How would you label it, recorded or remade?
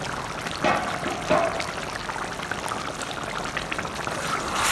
recorded